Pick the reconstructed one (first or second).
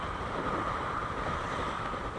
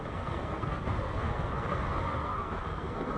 second